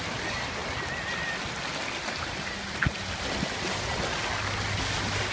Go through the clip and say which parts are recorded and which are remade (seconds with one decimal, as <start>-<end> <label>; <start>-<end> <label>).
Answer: 0.0-5.3 recorded